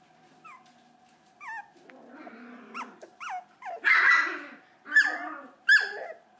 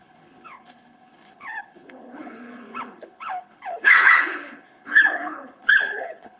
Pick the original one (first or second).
first